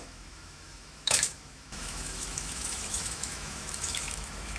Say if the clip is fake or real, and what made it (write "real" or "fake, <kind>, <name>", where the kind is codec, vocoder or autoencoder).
fake, autoencoder, DAC-VAE